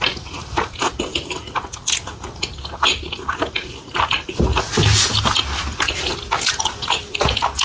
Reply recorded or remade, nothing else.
recorded